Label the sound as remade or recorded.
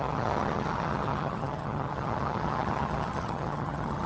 remade